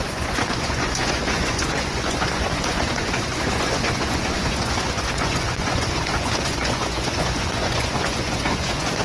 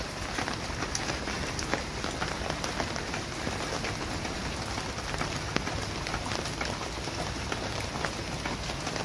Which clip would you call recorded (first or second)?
second